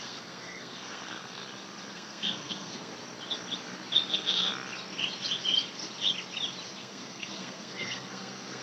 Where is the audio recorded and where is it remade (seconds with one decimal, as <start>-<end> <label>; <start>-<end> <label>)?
0.0-1.4 remade; 1.4-1.9 recorded; 1.9-2.9 remade; 2.9-4.1 recorded; 4.1-4.5 remade; 4.5-6.8 recorded; 6.8-8.6 remade